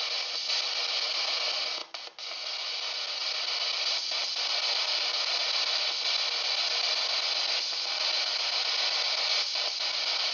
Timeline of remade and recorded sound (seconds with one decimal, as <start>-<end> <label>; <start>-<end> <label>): 0.0-10.3 recorded